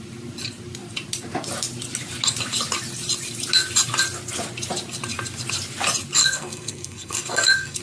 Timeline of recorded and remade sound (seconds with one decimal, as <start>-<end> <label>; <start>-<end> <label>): 0.0-6.2 recorded; 6.2-7.8 remade